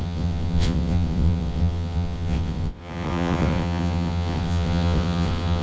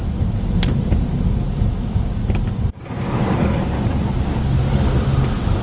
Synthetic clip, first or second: first